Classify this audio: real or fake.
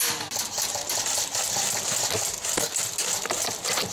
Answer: real